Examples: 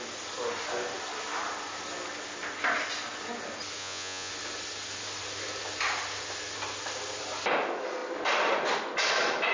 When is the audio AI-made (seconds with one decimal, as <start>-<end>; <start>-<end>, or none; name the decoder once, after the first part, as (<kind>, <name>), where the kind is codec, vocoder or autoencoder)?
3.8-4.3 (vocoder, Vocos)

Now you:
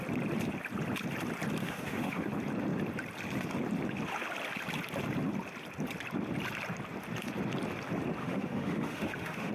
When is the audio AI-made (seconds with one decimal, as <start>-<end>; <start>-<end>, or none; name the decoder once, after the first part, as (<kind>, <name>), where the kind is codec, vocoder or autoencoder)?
1.6-2.3 (autoencoder, DAC-VAE); 8.2-9.5

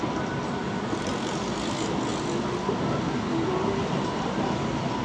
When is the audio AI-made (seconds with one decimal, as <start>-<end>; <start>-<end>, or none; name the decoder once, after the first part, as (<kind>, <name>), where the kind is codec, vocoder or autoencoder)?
none

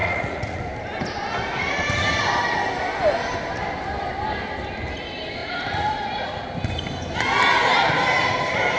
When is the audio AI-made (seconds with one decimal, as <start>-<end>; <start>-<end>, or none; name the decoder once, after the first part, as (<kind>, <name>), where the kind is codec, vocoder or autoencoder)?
0.0-0.6 (vocoder, Vocos); 5.4-6.4